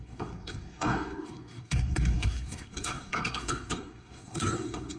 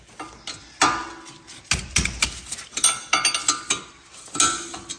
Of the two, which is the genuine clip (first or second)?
second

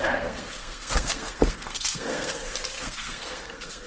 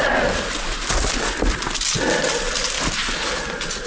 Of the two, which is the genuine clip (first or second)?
second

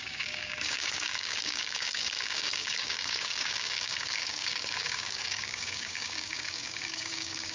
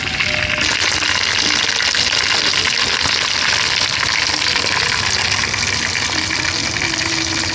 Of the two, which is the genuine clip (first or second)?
second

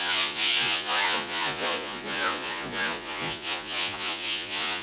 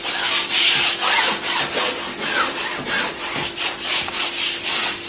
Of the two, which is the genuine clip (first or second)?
second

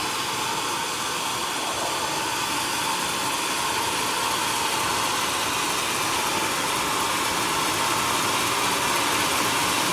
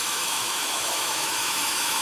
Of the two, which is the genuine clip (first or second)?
first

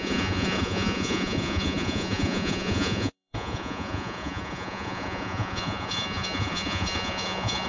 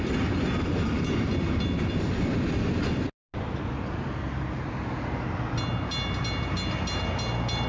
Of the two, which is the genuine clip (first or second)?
second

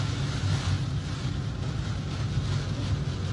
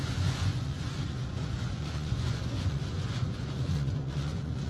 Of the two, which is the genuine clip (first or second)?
first